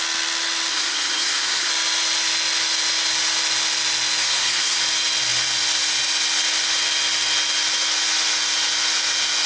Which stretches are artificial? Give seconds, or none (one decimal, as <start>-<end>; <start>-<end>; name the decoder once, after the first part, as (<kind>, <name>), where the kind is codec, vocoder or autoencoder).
0.7-1.7 (codec, SNAC); 4.2-4.8